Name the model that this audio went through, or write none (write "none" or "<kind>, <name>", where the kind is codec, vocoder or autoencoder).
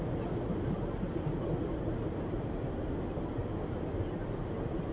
none